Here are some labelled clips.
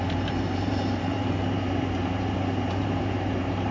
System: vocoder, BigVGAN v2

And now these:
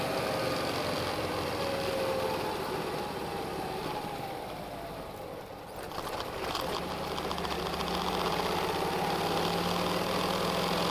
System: none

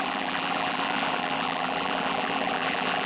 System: vocoder, BigVGAN v2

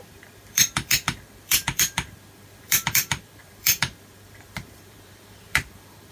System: vocoder, BigVGAN v2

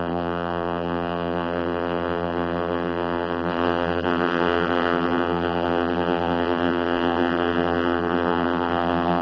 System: vocoder, BigVGAN v2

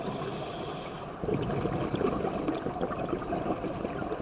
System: none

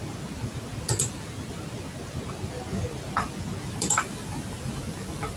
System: none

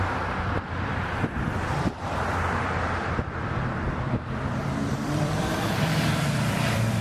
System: vocoder, BigVGAN v2